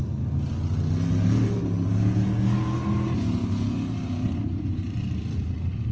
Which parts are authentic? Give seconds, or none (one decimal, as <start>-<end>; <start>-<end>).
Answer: 0.0-3.4